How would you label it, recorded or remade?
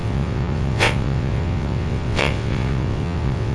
remade